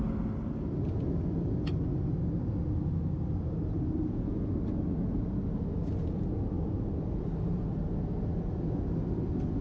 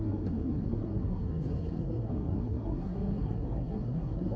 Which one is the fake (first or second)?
second